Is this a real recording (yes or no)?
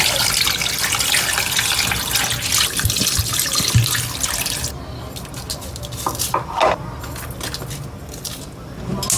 yes